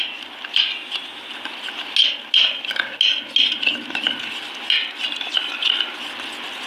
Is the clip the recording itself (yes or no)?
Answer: yes